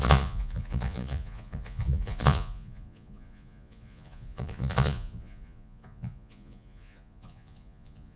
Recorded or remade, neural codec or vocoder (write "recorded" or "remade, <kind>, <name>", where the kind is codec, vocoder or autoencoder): remade, vocoder, Vocos